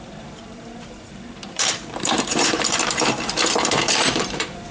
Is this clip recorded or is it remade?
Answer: remade